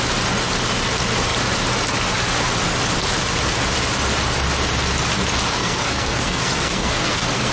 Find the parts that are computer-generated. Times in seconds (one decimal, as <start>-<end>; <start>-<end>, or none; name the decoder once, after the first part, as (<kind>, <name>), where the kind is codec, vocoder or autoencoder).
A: 5.5-7.5 (codec, SNAC)